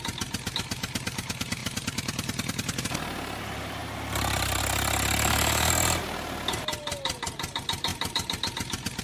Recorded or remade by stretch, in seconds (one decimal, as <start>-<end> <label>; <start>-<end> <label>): 0.0-5.2 recorded; 5.2-5.7 remade; 5.7-9.0 recorded